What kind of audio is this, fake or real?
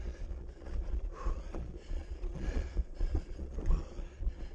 fake